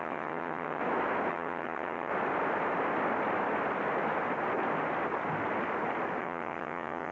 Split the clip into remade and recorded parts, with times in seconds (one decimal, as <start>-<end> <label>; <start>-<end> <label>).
0.0-0.8 remade; 0.8-1.3 recorded; 1.3-2.1 remade; 2.1-6.2 recorded; 6.2-7.1 remade